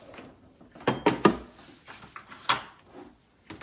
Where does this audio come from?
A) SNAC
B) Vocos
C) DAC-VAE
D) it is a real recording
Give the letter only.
D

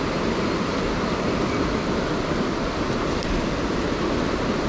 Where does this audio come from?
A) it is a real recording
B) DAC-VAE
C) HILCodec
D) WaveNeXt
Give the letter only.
A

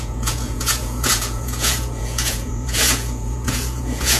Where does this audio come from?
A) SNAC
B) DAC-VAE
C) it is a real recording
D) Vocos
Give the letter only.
D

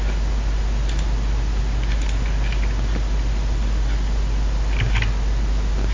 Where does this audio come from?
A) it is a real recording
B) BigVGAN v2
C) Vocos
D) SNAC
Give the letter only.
A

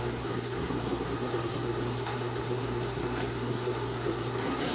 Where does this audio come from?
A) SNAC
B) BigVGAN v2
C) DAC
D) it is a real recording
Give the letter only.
A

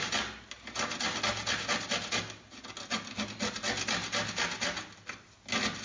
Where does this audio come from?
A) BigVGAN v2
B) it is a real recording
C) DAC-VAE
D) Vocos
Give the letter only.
B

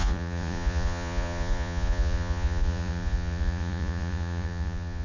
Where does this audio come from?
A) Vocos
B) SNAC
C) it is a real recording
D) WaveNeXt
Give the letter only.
A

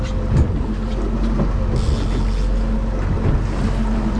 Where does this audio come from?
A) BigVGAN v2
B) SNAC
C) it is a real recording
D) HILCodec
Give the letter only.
C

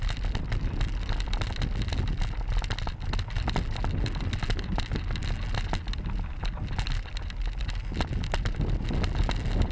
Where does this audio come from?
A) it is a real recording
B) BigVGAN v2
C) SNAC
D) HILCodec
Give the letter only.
A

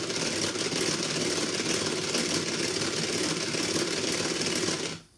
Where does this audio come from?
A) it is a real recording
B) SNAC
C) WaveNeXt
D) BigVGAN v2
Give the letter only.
A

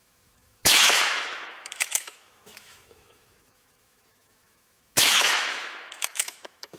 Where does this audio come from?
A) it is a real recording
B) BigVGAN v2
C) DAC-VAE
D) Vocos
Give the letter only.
C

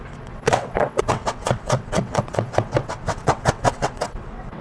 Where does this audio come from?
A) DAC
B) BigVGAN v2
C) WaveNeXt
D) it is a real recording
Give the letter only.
C